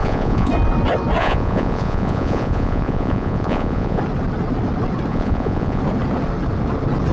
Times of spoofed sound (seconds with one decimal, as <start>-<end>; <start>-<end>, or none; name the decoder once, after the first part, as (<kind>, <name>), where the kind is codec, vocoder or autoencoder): 0.0-0.5 (vocoder, Vocos); 1.2-4.0; 5.1-5.8